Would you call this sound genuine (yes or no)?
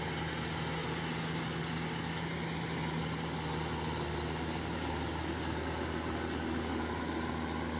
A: yes